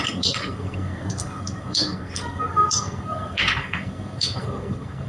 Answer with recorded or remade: remade